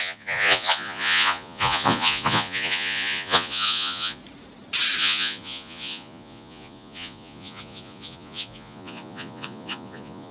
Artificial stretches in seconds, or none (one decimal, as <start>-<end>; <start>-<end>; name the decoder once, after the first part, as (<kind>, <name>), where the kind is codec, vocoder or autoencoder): 0.0-4.2 (vocoder, Vocos); 5.0-10.3

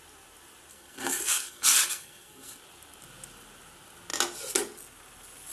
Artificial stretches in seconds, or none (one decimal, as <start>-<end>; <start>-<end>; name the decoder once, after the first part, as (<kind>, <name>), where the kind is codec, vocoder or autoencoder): 0.7-2.6 (codec, SNAC)

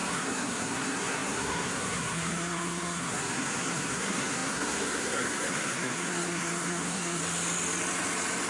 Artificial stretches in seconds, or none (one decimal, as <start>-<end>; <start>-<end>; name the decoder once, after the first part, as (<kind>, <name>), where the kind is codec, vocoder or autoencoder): 0.0-7.2 (codec, SNAC)

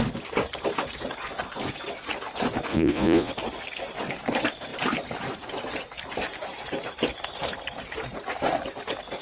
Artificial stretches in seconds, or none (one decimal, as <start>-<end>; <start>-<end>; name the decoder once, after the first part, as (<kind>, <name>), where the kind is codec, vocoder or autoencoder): 2.7-3.3 (vocoder, Vocos)

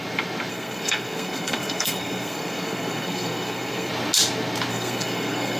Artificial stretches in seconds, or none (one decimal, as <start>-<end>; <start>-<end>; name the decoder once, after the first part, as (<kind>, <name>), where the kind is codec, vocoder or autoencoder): 0.5-3.9 (codec, SNAC); 4.7-5.6